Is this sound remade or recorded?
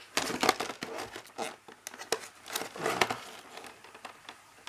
recorded